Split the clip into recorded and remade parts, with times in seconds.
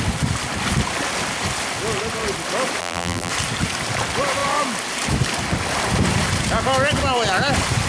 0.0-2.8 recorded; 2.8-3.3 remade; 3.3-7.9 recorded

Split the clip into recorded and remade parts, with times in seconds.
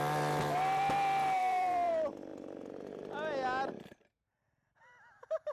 0.0-1.4 recorded; 1.4-1.9 remade; 1.9-5.5 recorded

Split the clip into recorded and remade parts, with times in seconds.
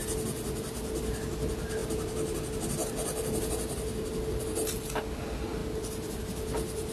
0.0-6.9 recorded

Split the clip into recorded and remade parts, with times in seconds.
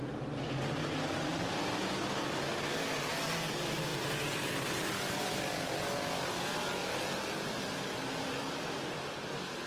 0.0-1.3 recorded; 1.3-2.0 remade; 2.0-3.9 recorded; 3.9-6.4 remade; 6.4-8.3 recorded; 8.3-9.7 remade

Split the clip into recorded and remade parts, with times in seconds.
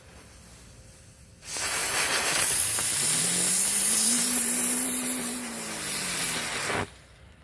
0.0-1.8 recorded; 1.8-6.2 remade; 6.2-7.4 recorded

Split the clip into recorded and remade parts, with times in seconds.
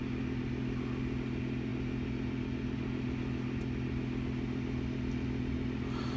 0.0-6.2 recorded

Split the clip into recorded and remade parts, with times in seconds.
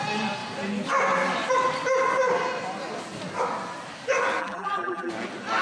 0.0-4.4 recorded; 4.4-5.1 remade; 5.1-5.6 recorded